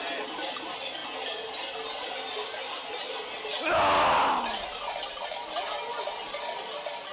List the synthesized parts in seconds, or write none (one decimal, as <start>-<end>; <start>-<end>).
none